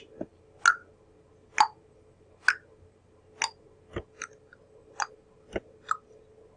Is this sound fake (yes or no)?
no